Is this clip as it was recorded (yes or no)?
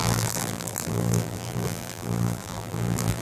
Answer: no